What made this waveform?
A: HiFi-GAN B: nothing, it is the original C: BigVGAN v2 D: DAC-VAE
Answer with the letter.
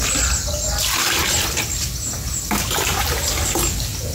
B